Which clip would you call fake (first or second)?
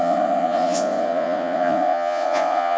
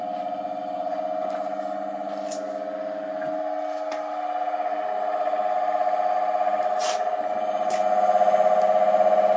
first